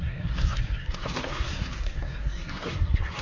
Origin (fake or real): fake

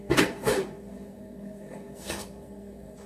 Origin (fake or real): fake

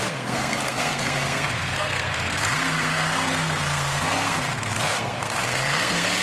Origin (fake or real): fake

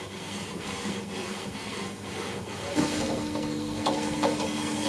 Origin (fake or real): fake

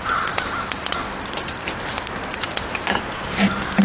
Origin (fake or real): real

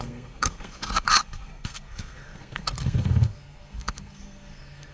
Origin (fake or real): fake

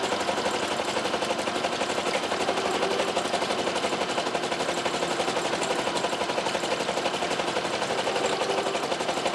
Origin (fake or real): real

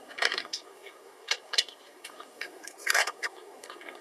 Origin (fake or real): fake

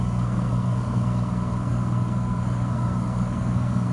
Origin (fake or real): fake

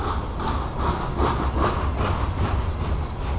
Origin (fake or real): real